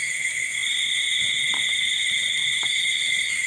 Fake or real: real